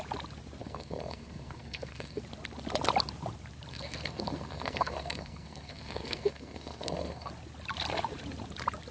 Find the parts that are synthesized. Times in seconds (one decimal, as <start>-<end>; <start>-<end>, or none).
0.6-2.2; 3.7-7.3